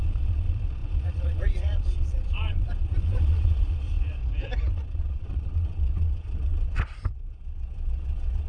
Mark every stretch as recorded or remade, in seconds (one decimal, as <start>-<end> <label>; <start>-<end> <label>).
0.0-4.2 remade; 4.2-4.7 recorded; 4.7-8.5 remade